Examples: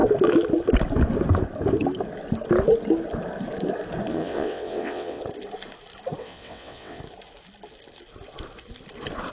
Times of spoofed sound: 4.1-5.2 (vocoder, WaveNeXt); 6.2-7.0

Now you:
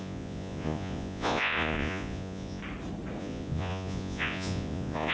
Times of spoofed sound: 0.0-2.6 (vocoder, Vocos); 3.2-5.1

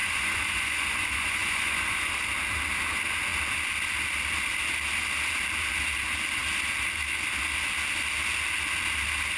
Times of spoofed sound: 0.0-2.1 (vocoder, Vocos)

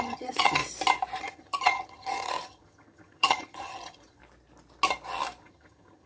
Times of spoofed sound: 0.0-0.6 (vocoder, HiFi-GAN); 1.2-4.2; 5.4-6.1

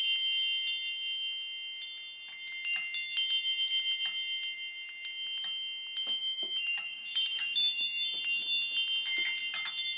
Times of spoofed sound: 6.2-8.2 (codec, DAC)